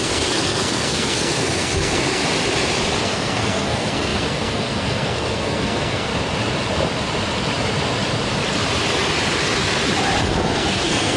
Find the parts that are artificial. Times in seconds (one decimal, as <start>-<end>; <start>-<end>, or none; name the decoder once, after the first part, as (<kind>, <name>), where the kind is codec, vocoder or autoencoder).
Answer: 0.0-2.2 (codec, SNAC); 3.0-6.1; 10.2-11.2